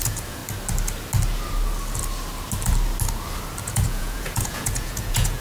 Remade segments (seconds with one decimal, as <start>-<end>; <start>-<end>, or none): 0.0-0.4; 3.6-5.4